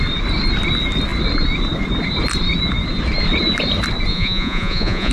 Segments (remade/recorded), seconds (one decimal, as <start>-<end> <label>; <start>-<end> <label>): 0.0-4.1 recorded; 4.1-5.1 remade